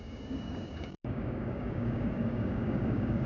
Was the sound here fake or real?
fake